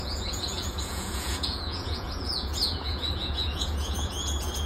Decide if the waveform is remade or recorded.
remade